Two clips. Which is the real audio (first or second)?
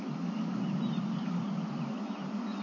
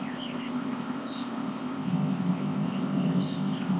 first